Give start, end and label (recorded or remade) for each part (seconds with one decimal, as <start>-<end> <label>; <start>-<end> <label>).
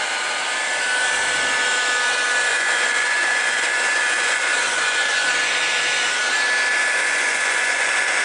0.0-2.5 recorded; 2.5-5.5 remade; 5.5-7.0 recorded; 7.0-8.2 remade